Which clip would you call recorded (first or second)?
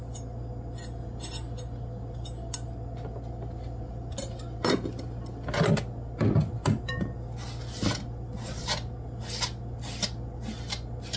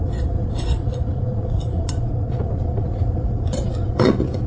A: first